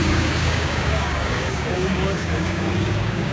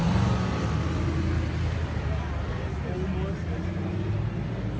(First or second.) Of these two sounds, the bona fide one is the second